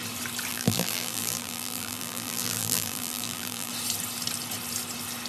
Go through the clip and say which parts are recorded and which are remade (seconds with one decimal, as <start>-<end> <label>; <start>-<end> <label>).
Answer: 0.0-0.5 recorded; 0.5-3.7 remade; 3.7-5.3 recorded